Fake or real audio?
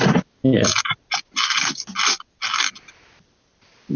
real